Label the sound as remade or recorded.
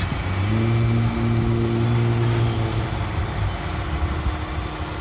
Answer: recorded